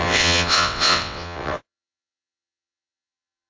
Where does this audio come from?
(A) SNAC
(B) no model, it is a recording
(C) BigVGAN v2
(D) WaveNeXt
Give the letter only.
D